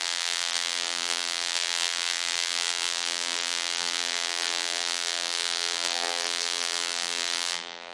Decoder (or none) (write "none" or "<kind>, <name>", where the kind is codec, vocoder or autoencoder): vocoder, BigVGAN v2